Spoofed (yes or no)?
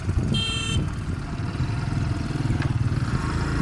no